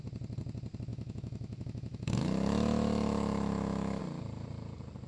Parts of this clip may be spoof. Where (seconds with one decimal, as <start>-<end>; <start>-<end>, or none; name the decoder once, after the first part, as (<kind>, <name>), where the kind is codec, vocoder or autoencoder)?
0.9-4.0 (autoencoder, DAC-VAE)

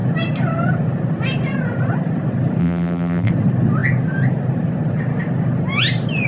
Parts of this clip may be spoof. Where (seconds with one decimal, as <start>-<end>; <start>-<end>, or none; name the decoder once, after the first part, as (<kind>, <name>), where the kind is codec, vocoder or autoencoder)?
2.6-3.3 (vocoder, BigVGAN v2)

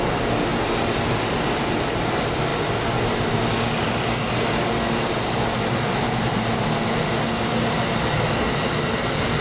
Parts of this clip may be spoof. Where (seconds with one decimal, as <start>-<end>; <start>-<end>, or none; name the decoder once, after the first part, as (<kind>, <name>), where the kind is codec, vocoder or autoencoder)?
none